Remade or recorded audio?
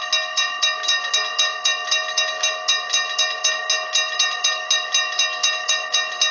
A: recorded